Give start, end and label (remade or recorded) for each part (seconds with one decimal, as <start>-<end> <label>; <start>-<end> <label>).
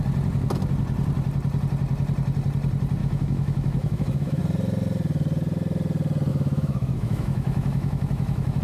0.0-3.0 recorded; 3.0-4.4 remade; 4.4-6.3 recorded; 6.3-8.6 remade